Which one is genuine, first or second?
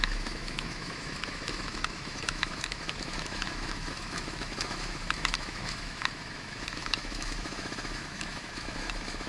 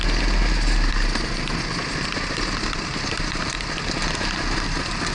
second